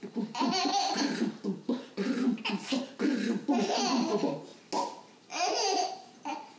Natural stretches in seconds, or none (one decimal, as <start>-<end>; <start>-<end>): 0.0-6.6